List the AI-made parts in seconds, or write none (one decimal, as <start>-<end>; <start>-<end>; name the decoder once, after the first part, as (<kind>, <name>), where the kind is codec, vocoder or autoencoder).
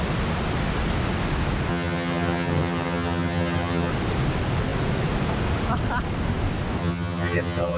1.7-3.9 (vocoder, HiFi-GAN); 6.8-7.8